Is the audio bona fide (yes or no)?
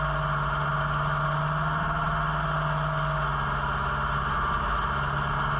yes